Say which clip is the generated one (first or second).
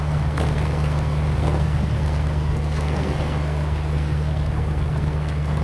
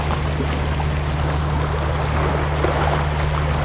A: first